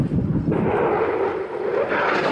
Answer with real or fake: real